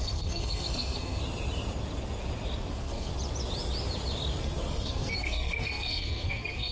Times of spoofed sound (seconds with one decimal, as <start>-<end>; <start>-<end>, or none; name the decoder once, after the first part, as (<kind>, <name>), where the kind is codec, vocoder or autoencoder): 0.0-1.2 (codec, SNAC); 2.7-3.1; 4.4-6.7